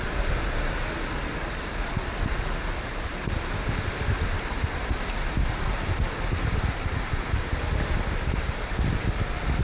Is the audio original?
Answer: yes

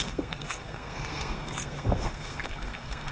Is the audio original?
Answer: no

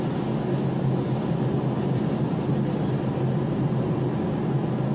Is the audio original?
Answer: yes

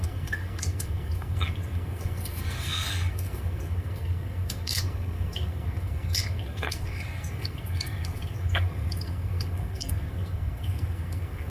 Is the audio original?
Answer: no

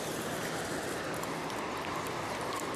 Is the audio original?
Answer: yes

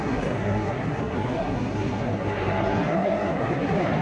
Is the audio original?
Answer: no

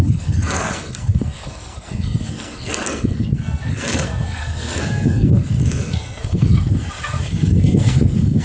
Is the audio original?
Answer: no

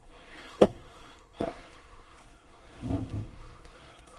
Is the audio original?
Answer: no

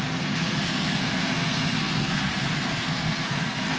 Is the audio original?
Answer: no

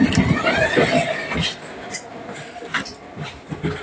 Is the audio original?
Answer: yes